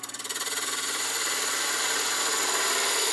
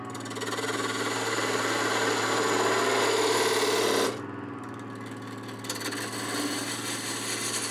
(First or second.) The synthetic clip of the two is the first